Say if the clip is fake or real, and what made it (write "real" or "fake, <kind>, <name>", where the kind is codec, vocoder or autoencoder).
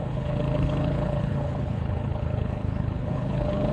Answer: fake, codec, HILCodec